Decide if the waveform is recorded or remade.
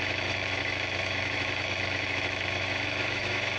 remade